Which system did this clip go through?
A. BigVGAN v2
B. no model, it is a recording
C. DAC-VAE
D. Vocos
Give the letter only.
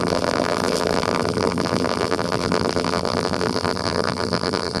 A